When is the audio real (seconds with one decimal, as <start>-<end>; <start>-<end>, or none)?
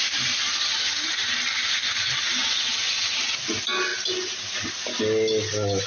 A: 0.0-2.4; 3.2-5.9